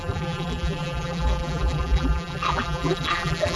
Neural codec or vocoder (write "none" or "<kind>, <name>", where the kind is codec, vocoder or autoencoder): vocoder, BigVGAN v2